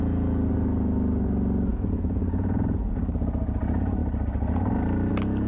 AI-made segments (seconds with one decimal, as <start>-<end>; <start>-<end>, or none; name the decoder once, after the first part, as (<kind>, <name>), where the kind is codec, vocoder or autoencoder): 1.7-3.0 (vocoder, Vocos)